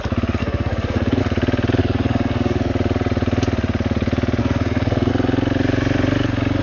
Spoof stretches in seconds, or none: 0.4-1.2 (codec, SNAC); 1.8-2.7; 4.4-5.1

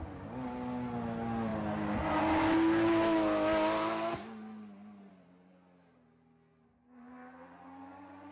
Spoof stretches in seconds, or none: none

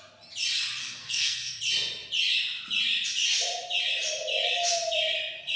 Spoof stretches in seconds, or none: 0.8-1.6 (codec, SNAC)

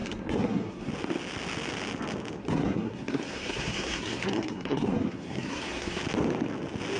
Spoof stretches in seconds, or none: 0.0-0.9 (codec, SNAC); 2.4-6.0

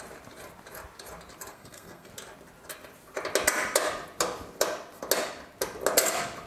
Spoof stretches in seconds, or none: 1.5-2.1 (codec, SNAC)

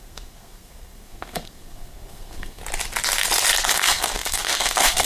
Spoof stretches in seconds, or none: 0.0-2.6 (codec, SNAC); 3.7-5.1

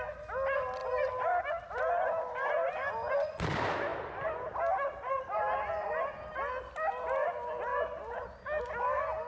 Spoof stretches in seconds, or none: none

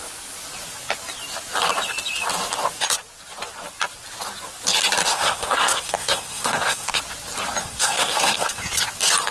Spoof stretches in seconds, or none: 5.1-7.0 (codec, SNAC); 7.6-8.6